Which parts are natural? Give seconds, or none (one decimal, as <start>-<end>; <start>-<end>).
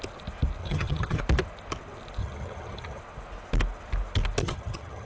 0.0-0.6; 1.2-2.2; 3.0-4.4